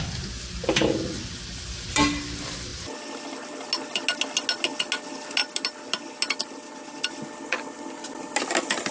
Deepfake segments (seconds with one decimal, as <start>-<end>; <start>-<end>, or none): none